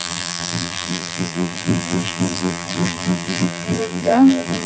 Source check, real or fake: fake